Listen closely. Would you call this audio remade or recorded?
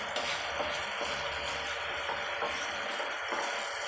recorded